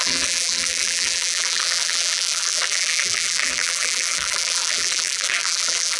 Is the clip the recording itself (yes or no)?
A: no